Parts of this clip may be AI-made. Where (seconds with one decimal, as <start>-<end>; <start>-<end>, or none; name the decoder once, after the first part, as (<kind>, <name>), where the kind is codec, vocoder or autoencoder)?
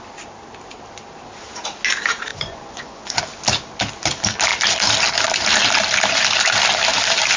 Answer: 2.3-3.2 (vocoder, Vocos)